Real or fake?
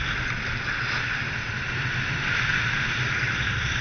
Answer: real